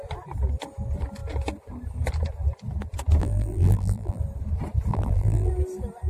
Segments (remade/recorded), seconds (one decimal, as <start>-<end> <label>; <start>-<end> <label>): 0.0-3.2 recorded; 3.2-4.2 remade; 4.2-4.9 recorded; 4.9-5.5 remade; 5.5-6.1 recorded